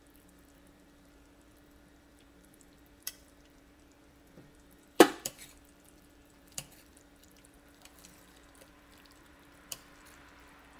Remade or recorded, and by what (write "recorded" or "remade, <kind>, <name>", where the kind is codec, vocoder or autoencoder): remade, vocoder, BigVGAN v2